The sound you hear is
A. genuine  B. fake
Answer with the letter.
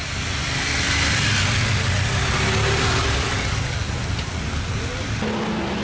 A